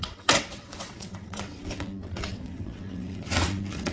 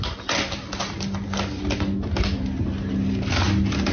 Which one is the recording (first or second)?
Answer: second